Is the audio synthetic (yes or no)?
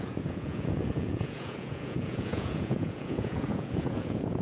yes